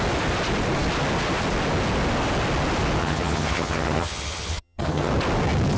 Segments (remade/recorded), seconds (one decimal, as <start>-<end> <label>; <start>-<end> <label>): 0.0-3.0 recorded; 3.0-5.1 remade; 5.1-5.8 recorded